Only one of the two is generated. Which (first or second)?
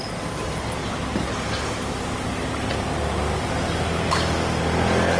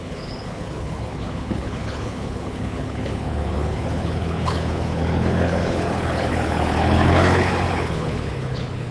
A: second